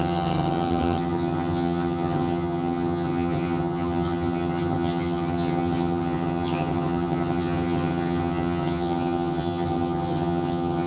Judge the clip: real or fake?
fake